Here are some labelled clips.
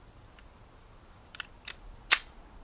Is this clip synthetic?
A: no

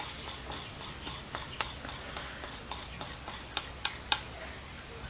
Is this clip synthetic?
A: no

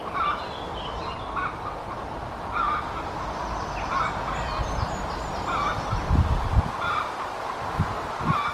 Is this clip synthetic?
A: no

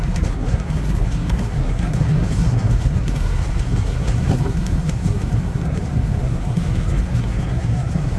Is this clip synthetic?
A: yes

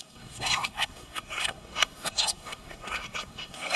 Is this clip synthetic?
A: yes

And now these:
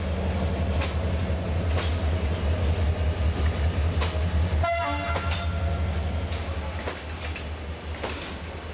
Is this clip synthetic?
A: no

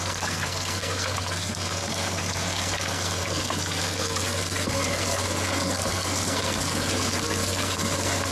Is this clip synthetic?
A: yes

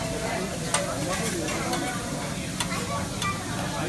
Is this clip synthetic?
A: no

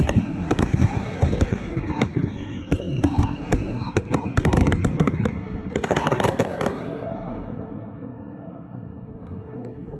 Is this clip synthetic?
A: yes